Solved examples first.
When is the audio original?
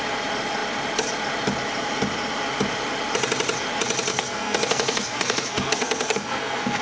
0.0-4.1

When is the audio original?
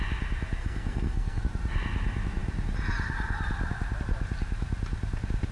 0.0-0.6; 1.4-5.5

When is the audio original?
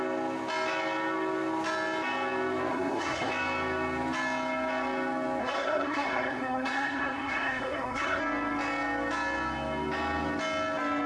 0.0-2.7; 3.3-5.4; 8.2-11.1